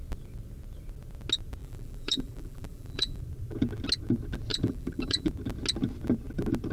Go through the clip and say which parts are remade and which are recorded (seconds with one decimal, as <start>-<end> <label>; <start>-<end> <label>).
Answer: 0.0-1.6 recorded; 1.6-3.2 remade; 3.2-4.5 recorded; 4.5-5.3 remade; 5.3-6.7 recorded